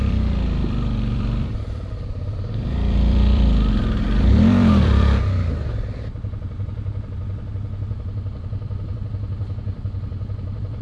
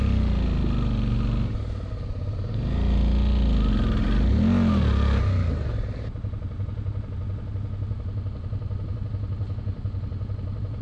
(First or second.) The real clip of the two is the second